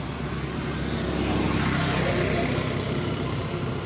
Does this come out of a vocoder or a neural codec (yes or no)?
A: no